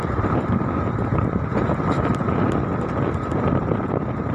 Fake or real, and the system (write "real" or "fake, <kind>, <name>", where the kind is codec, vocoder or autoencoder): real